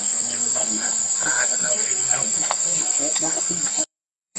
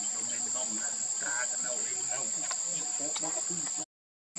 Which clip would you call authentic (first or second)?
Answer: second